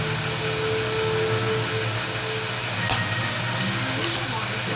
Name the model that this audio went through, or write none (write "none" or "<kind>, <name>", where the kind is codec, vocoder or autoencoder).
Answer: none